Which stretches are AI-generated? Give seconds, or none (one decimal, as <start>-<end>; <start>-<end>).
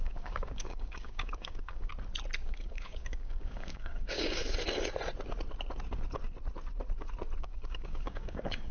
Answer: 0.0-1.9; 2.4-4.4; 7.4-8.7